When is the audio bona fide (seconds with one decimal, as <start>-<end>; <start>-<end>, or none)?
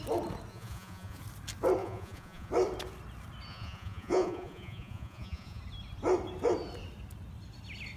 0.0-0.5; 1.2-1.8; 2.5-3.5; 5.6-8.0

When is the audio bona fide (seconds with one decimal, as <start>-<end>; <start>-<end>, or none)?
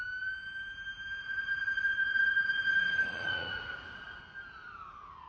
0.0-1.2; 4.2-5.3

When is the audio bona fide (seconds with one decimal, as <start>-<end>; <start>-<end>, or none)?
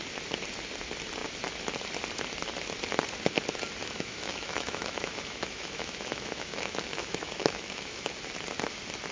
0.0-3.8; 8.1-9.1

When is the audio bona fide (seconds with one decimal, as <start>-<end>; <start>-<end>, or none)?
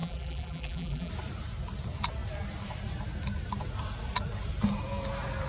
1.1-5.5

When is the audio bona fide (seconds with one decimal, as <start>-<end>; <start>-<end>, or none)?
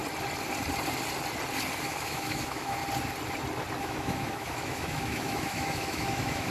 0.0-1.8; 2.8-3.8